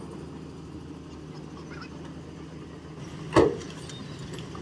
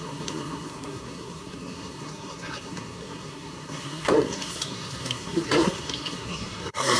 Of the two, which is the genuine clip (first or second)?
first